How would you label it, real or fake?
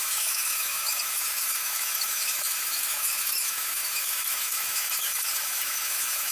fake